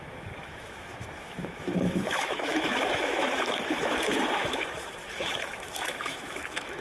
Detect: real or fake fake